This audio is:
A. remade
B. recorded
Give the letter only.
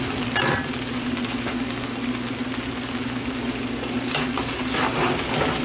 B